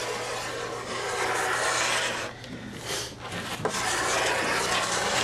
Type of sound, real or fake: real